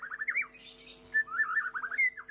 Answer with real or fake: real